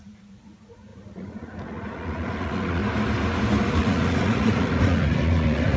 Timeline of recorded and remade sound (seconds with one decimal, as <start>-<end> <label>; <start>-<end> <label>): 0.0-2.8 remade; 2.8-3.7 recorded; 3.7-5.8 remade